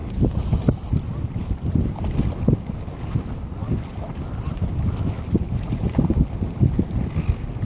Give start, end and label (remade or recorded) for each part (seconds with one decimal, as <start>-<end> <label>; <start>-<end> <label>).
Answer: 0.0-7.7 recorded